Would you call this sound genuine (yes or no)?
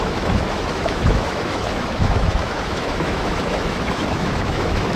no